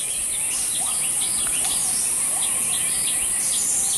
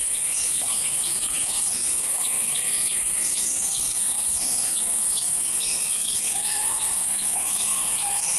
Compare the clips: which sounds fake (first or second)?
second